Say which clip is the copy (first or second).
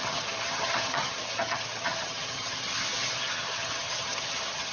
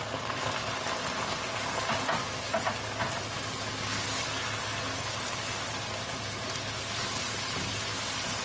first